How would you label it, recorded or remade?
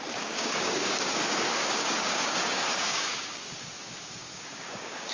remade